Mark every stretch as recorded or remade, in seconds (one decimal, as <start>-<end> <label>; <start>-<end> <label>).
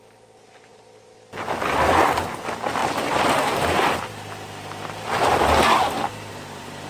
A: 0.0-6.9 recorded